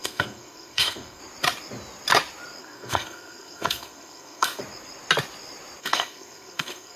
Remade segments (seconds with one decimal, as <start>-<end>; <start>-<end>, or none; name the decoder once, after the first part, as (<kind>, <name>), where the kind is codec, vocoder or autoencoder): 0.0-1.2 (codec, SNAC); 2.6-4.6; 5.8-7.0